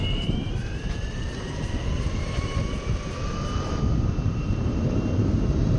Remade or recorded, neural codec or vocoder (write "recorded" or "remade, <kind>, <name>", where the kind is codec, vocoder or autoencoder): remade, vocoder, BigVGAN v2